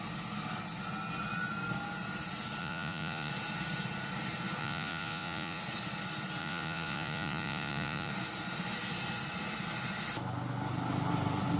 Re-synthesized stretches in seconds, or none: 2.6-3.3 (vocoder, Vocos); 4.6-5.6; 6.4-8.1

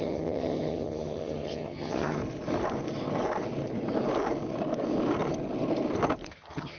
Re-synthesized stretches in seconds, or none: 0.0-2.2 (vocoder, HiFi-GAN); 6.3-6.8

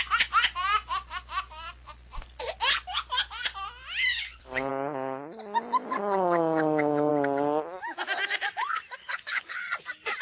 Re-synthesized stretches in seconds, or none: 4.1-4.7 (codec, HILCodec); 6.0-7.1; 9.0-9.6

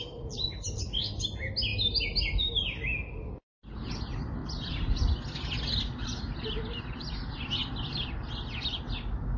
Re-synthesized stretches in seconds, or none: none

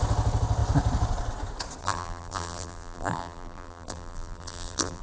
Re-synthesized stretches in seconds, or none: 1.8-5.0 (vocoder, BigVGAN v2)

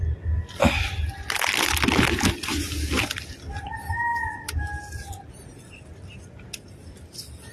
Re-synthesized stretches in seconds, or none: none